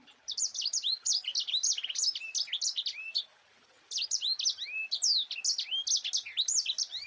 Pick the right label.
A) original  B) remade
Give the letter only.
A